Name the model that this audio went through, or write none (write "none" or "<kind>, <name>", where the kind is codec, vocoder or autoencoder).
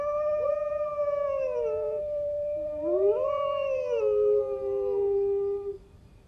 vocoder, BigVGAN v2